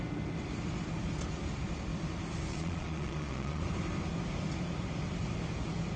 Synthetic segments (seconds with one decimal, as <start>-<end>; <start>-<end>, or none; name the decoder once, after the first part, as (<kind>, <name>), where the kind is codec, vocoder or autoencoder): 2.5-3.6 (vocoder, Vocos)